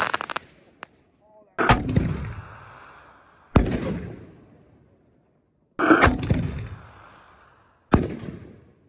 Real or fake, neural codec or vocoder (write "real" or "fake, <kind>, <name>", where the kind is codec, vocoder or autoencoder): real